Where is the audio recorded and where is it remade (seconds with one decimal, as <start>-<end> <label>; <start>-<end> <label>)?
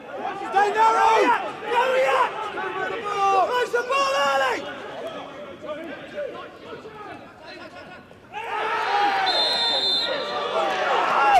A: 0.0-1.9 recorded; 1.9-2.9 remade; 2.9-4.1 recorded; 4.1-9.4 remade; 9.4-11.4 recorded